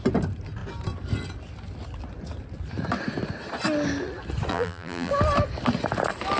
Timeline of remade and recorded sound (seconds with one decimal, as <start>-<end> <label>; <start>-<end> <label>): 0.0-4.5 recorded; 4.5-5.1 remade; 5.1-6.4 recorded